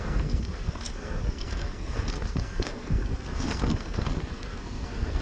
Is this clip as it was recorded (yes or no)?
no